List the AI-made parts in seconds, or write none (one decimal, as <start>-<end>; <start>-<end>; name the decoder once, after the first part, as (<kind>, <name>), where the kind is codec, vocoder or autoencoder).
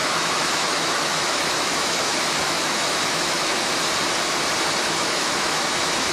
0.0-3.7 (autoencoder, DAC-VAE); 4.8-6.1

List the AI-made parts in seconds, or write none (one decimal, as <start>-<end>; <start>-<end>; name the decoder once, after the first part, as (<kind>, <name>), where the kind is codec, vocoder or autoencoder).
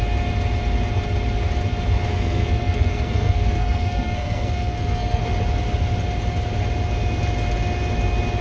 2.1-5.2 (codec, SNAC)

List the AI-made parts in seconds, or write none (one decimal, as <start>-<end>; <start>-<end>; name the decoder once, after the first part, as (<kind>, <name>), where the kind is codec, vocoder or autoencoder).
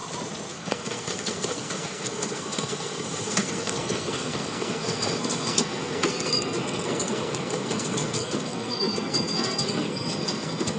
0.5-10.8 (codec, SNAC)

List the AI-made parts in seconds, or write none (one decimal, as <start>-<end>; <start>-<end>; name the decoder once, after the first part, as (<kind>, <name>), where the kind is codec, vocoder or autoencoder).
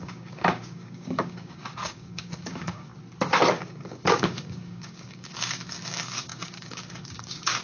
0.0-2.9 (codec, DAC); 3.5-7.6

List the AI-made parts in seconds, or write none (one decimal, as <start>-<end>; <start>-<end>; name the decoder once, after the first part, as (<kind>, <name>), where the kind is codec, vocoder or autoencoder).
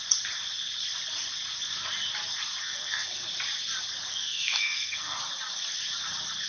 2.6-3.1 (codec, SNAC); 4.1-5.2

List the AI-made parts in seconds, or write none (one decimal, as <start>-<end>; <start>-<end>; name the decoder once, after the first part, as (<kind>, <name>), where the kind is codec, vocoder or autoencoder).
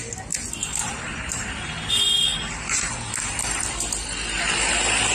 0.6-1.9 (vocoder, BigVGAN v2)